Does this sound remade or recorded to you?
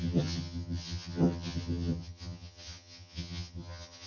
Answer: remade